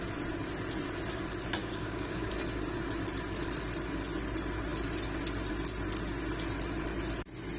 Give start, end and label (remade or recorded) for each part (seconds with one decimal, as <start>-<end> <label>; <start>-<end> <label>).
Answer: 0.0-1.6 recorded; 1.6-2.3 remade; 2.3-7.6 recorded